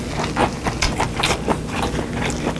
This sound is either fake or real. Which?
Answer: real